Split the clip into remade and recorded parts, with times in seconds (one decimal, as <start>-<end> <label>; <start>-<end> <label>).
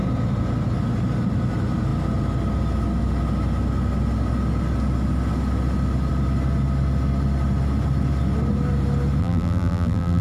0.0-9.2 recorded; 9.2-10.2 remade